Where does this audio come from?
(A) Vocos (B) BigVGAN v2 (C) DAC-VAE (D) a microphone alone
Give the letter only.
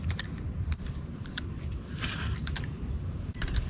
B